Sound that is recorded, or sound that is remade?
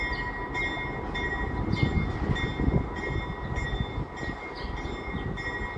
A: recorded